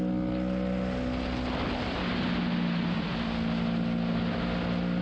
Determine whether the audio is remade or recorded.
recorded